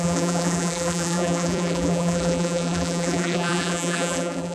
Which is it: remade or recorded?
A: remade